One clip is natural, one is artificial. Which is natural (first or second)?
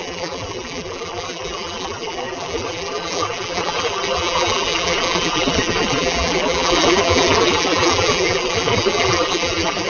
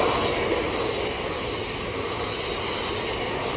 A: second